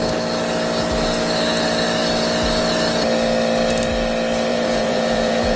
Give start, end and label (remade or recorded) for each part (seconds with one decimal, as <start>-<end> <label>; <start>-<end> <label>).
0.0-4.5 recorded; 4.5-5.6 remade